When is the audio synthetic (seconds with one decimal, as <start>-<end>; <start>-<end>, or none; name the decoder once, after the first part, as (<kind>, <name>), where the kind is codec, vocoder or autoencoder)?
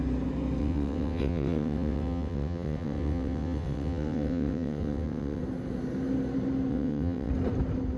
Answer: 0.6-5.4 (vocoder, WaveNeXt); 6.7-7.3